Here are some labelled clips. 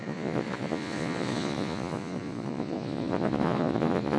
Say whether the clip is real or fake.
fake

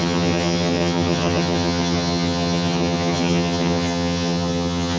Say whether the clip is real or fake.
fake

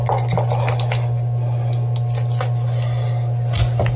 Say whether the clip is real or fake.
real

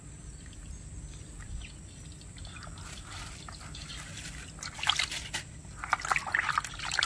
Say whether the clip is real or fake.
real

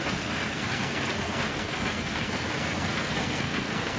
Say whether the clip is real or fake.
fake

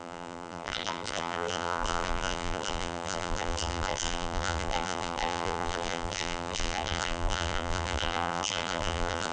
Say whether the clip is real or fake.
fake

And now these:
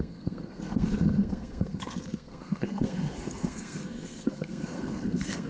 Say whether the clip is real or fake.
fake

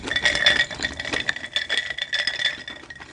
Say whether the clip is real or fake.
real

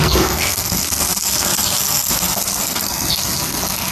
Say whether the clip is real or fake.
fake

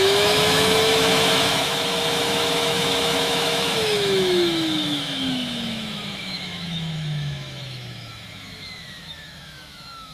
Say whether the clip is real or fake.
fake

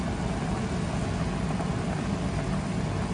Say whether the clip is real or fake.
real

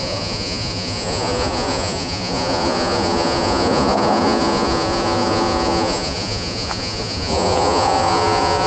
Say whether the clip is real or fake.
fake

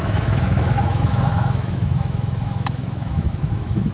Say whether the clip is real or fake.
fake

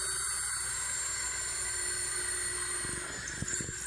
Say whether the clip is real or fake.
real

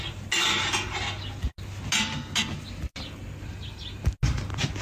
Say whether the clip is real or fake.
real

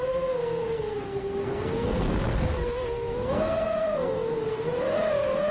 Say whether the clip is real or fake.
fake